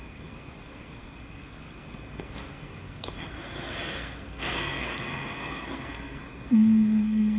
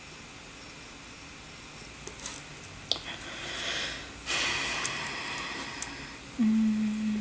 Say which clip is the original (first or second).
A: second